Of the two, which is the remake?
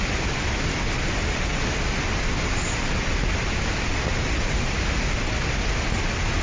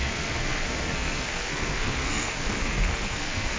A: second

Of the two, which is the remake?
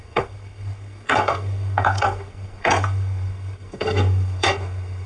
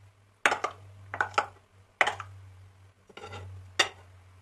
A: first